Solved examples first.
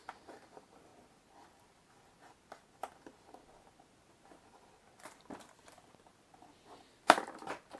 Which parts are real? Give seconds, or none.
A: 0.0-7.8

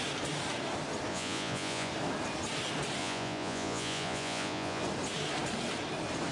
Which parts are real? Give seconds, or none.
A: 0.0-1.1; 1.9-3.0; 4.8-6.3

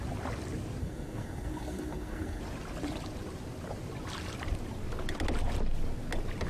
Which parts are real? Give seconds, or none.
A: 0.0-0.8; 2.4-6.5

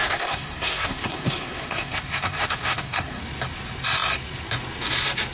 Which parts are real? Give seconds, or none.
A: 3.2-5.3